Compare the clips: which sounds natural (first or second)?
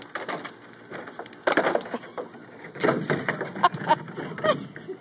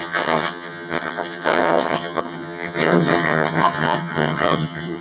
first